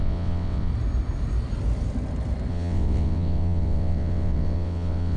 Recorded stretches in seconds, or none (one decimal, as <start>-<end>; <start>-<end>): 0.7-2.5